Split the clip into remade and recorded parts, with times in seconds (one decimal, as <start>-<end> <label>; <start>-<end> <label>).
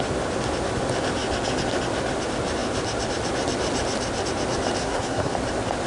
0.0-4.8 recorded; 4.8-5.3 remade; 5.3-5.9 recorded